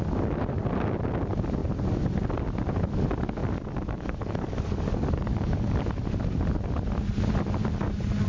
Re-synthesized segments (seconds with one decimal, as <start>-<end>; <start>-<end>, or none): 3.4-5.8